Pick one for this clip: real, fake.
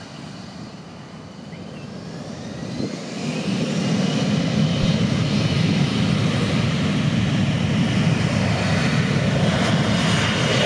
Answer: real